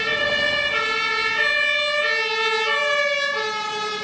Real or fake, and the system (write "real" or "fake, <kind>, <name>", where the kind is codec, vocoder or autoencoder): real